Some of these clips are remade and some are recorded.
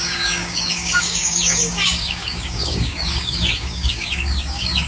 remade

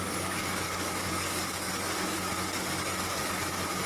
remade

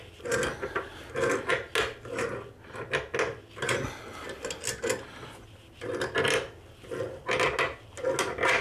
recorded